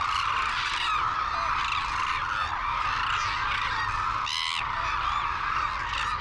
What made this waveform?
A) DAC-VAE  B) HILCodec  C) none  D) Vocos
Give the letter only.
C